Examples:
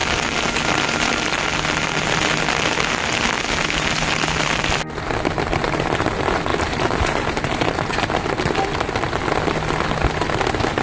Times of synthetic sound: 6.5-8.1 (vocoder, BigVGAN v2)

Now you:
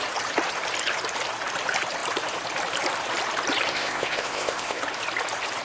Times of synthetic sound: 3.7-4.8 (codec, ZipCodec)

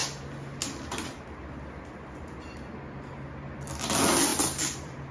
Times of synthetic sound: 4.3-5.1 (vocoder, BigVGAN v2)